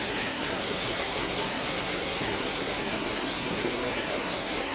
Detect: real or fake fake